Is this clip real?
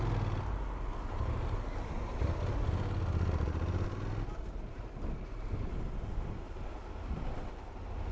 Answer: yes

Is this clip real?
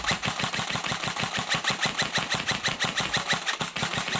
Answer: yes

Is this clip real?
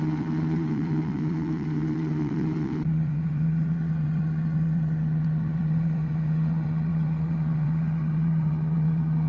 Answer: no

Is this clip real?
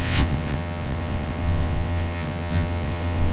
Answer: no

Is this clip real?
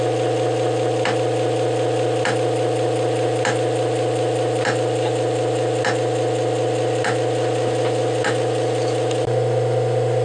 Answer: yes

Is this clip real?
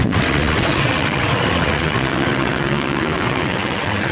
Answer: no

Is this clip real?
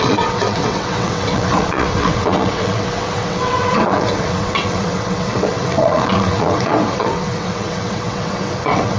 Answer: no